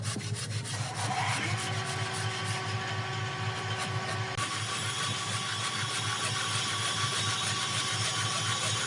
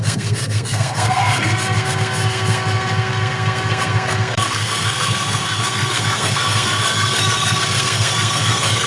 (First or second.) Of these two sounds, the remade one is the second